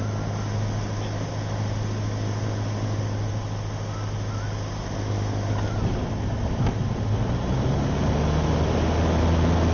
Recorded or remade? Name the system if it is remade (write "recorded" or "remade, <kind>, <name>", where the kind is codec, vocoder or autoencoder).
recorded